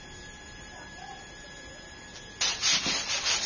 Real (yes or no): yes